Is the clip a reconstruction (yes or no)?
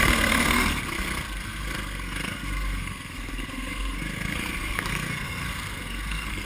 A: yes